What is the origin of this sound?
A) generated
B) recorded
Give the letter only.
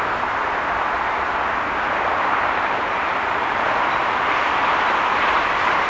A